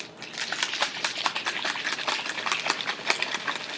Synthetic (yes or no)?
no